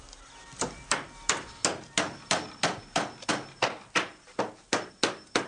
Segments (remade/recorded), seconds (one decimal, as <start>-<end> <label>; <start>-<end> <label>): 0.0-5.5 recorded